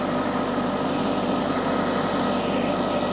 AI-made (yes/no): no